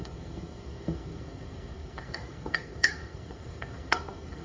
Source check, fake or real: fake